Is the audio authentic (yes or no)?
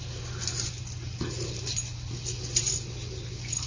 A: yes